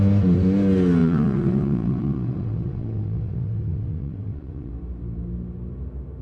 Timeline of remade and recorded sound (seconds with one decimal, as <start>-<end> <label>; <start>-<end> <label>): 0.0-1.0 recorded; 1.0-4.7 remade; 4.7-6.2 recorded